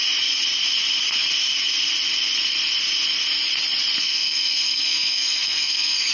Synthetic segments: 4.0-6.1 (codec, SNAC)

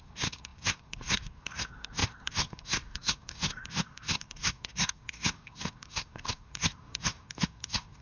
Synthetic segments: 0.0-8.0 (codec, SNAC)

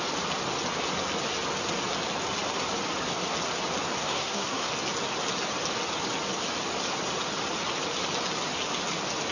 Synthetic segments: 4.0-4.7 (codec, SNAC)

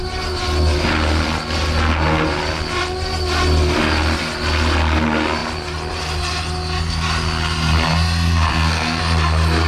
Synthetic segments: 8.5-9.0 (codec, SNAC)

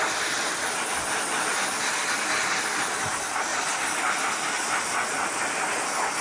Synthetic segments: none

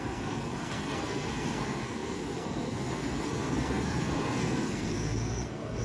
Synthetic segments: 0.0-5.8 (codec, SNAC)

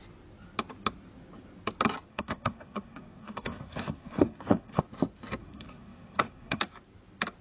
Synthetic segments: 2.1-4.8 (codec, SNAC); 5.4-6.6

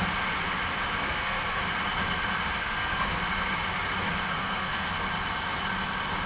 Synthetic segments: 1.0-1.6 (codec, SNAC); 2.6-3.1; 4.3-4.9